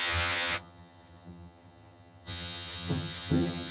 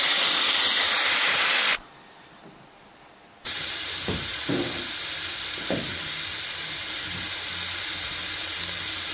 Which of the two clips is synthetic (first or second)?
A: first